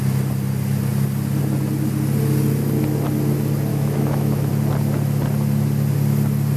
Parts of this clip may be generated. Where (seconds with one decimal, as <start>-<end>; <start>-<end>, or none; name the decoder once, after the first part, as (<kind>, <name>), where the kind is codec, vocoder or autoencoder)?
3.7-4.5 (autoencoder, DAC-VAE)